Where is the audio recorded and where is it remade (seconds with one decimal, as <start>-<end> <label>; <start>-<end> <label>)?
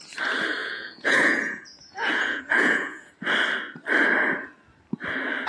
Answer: 0.0-0.6 recorded; 0.6-3.1 remade; 3.1-5.5 recorded